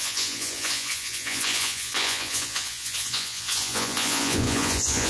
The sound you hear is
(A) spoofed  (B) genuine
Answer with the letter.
A